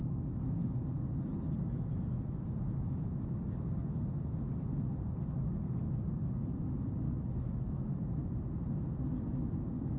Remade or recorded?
recorded